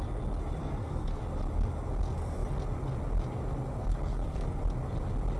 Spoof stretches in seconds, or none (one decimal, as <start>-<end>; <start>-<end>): 0.6-1.2; 3.8-4.6